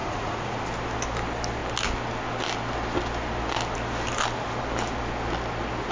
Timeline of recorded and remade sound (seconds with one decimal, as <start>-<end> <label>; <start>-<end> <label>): 0.0-0.6 remade; 0.6-5.9 recorded